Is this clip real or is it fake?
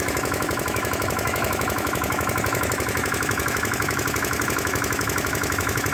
fake